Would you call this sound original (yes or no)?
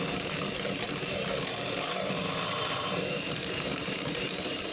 no